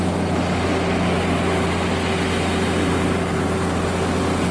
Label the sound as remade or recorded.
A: recorded